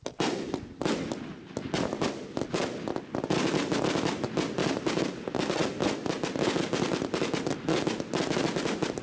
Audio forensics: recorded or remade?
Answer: recorded